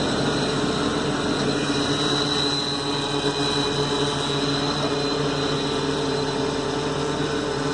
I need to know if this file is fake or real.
real